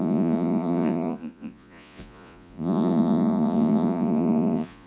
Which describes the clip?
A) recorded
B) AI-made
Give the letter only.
B